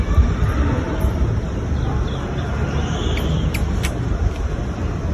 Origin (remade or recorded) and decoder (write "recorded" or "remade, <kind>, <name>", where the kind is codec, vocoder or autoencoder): recorded